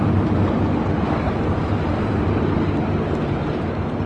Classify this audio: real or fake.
fake